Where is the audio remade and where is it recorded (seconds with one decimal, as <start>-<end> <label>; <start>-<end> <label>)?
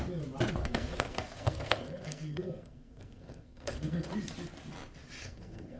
0.0-0.6 recorded; 0.6-4.1 remade; 4.1-5.2 recorded; 5.2-5.8 remade